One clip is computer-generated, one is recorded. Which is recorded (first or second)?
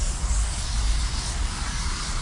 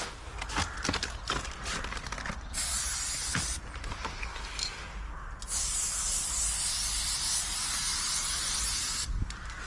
second